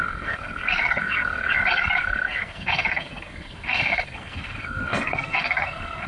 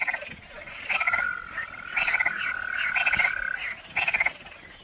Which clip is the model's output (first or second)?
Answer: first